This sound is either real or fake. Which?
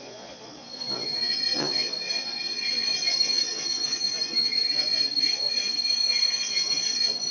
fake